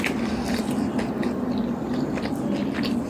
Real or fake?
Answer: real